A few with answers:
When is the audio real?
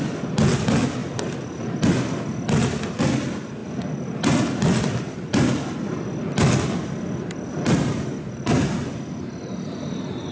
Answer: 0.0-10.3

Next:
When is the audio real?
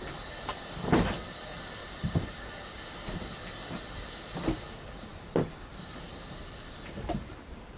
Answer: 0.0-1.8; 2.8-5.1; 7.3-7.8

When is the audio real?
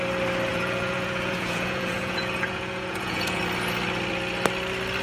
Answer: 0.0-0.5; 3.4-5.0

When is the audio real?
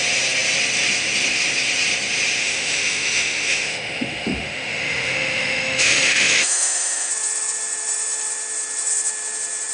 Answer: 0.0-2.4; 7.1-9.7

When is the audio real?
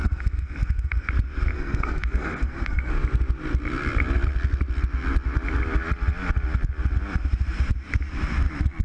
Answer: 1.1-1.5; 2.9-8.8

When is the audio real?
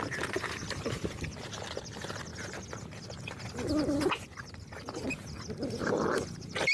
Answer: 0.0-6.7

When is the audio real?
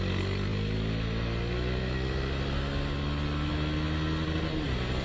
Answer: 0.0-5.0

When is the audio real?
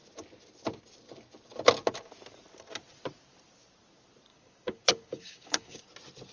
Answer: 0.0-4.3; 5.8-6.3